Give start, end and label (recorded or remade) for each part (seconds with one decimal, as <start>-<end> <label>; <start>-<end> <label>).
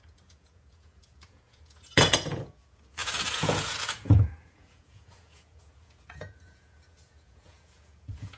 0.0-8.4 remade